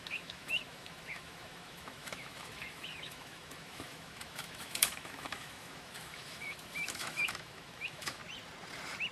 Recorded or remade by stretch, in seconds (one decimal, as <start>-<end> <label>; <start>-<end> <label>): 0.0-8.2 remade; 8.2-9.1 recorded